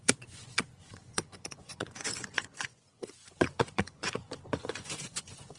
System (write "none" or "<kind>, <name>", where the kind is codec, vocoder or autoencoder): vocoder, Vocos